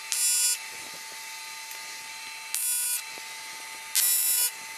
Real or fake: real